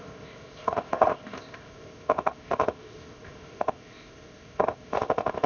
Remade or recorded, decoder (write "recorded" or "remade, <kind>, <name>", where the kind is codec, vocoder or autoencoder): remade, codec, ZipCodec